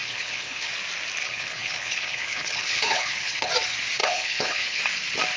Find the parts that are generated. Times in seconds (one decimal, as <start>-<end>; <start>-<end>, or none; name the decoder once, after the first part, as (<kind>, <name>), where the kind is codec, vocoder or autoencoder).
0.0-0.7 (codec, HILCodec); 1.2-3.5; 4.0-4.8